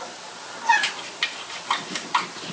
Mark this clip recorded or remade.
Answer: recorded